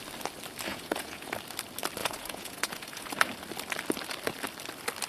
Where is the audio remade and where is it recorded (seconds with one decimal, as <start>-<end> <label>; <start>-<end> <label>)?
0.0-0.7 recorded; 0.7-1.3 remade; 1.3-2.0 recorded; 2.0-3.1 remade; 3.1-5.1 recorded